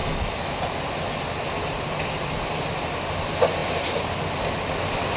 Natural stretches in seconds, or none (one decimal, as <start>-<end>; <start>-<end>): 0.5-5.2